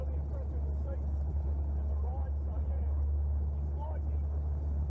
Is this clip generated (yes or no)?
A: no